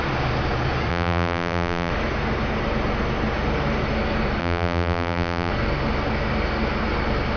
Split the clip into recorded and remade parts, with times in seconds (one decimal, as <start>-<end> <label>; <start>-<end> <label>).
0.0-0.9 recorded; 0.9-1.9 remade; 1.9-4.4 recorded; 4.4-5.5 remade; 5.5-7.4 recorded